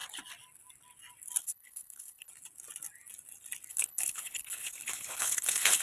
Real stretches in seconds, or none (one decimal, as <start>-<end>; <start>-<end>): 0.0-1.4; 2.3-3.7